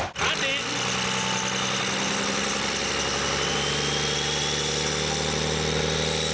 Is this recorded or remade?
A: recorded